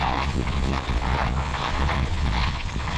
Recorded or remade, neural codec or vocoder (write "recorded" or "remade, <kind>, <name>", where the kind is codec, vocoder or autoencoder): remade, vocoder, Vocos